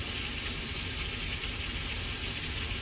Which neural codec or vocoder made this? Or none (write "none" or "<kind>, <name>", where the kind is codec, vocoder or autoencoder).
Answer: none